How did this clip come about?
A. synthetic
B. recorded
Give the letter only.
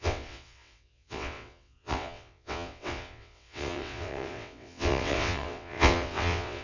A